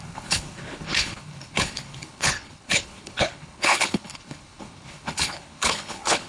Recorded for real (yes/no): no